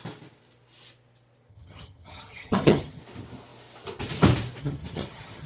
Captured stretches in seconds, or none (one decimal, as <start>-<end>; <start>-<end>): 0.0-1.5; 3.0-4.6

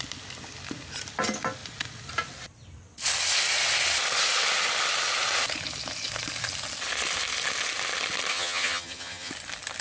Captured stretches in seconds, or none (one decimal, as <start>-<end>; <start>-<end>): 0.0-8.3; 9.3-9.8

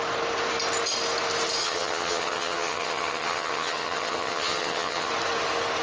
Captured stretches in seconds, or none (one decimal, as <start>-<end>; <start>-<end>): 0.0-1.6; 5.1-5.8

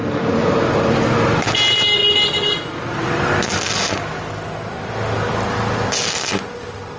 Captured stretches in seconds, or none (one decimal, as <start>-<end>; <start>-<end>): 0.0-7.0